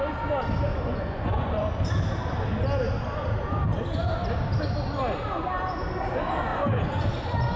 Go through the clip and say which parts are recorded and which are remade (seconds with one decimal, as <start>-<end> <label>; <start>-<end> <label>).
0.0-0.7 recorded; 0.7-1.7 remade; 1.7-6.5 recorded; 6.5-7.1 remade; 7.1-7.6 recorded

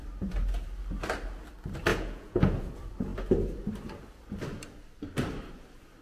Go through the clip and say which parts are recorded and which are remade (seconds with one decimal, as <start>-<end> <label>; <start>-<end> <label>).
0.0-1.9 recorded; 1.9-2.7 remade; 2.7-6.0 recorded

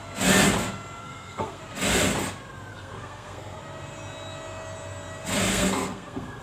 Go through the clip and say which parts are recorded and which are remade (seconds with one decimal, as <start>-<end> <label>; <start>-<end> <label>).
0.0-1.0 recorded; 1.0-1.6 remade; 1.6-2.7 recorded; 2.7-3.6 remade; 3.6-5.5 recorded; 5.5-6.4 remade

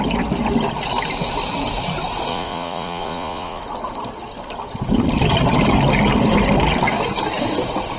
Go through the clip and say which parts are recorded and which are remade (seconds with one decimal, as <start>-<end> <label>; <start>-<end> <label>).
0.0-2.3 recorded; 2.3-3.6 remade; 3.6-8.0 recorded

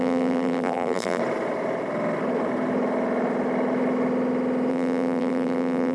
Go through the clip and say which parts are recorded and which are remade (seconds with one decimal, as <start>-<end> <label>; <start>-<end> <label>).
0.0-1.2 remade; 1.2-4.7 recorded; 4.7-5.9 remade